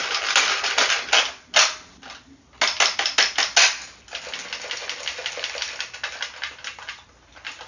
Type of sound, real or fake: real